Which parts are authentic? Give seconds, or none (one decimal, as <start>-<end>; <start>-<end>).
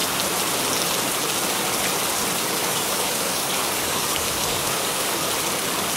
0.0-2.6; 5.3-6.0